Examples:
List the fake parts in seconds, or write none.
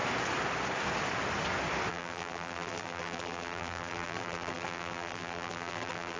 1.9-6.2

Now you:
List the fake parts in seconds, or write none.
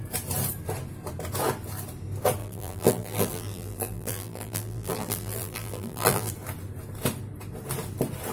2.4-6.3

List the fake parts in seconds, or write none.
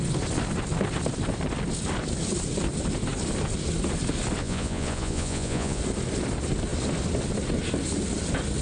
4.4-5.8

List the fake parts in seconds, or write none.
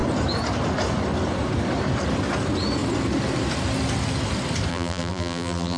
4.7-5.8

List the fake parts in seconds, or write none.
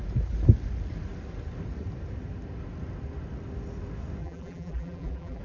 4.2-5.4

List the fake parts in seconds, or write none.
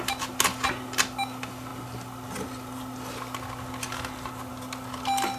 none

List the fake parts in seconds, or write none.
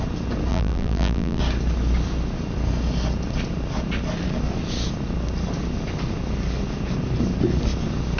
0.5-1.4